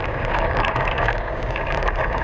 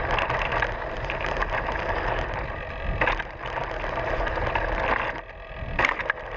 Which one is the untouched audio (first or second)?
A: second